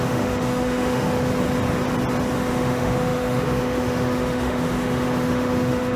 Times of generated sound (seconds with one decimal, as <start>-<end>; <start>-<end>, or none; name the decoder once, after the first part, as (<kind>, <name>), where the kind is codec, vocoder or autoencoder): 0.0-1.3 (autoencoder, DAC-VAE); 2.5-6.0